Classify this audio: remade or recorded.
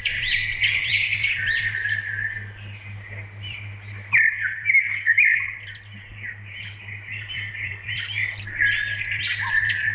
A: recorded